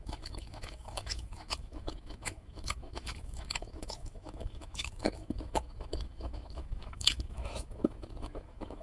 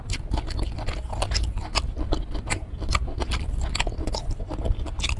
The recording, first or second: second